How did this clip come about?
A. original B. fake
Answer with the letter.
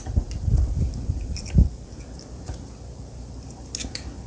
A